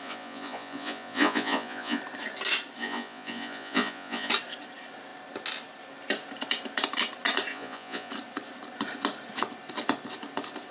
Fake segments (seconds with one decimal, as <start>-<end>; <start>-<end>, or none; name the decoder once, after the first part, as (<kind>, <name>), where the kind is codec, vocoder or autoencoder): 0.0-2.0 (vocoder, Vocos); 2.8-4.3; 7.5-8.1